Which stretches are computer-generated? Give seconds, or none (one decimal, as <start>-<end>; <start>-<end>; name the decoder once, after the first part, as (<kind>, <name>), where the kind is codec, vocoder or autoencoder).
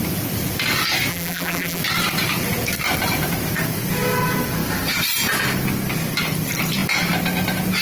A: 1.1-1.8 (vocoder, BigVGAN v2)